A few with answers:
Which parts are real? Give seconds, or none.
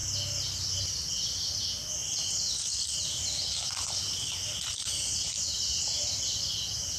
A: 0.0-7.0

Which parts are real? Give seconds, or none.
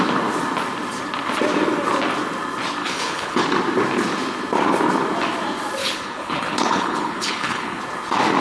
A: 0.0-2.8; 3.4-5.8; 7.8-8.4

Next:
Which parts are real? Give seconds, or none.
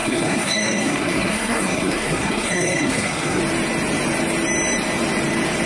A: 3.4-5.7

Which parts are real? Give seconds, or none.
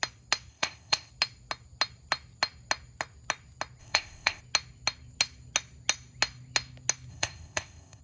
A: 0.0-0.5; 1.1-3.8; 4.4-7.1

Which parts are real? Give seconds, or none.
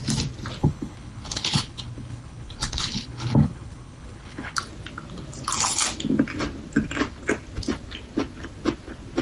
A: 0.0-0.6; 4.6-9.2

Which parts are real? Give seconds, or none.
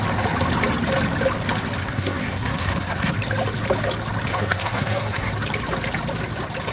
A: 0.0-1.8; 3.1-4.3; 5.3-6.7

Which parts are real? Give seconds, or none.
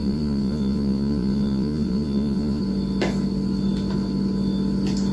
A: 2.6-5.1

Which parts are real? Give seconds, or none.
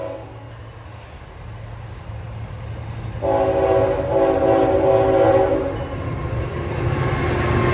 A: 0.0-7.7